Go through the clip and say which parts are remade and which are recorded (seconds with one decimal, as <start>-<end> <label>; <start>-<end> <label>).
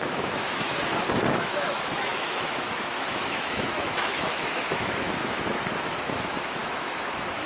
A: 0.0-0.7 remade; 0.7-1.3 recorded; 1.3-7.5 remade